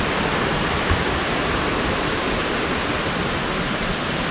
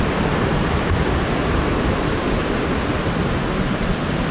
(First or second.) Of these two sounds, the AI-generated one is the first